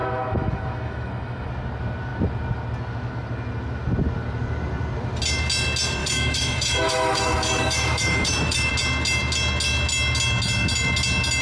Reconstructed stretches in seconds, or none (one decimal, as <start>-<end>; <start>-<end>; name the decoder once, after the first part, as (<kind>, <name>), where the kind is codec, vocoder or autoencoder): 0.0-1.5 (autoencoder, DAC-VAE); 6.0-8.7